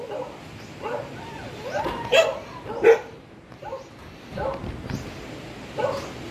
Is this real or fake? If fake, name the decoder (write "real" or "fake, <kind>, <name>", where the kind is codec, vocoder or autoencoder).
real